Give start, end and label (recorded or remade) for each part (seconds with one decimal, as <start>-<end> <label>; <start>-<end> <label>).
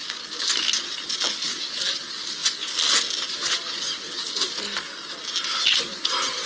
0.0-6.5 recorded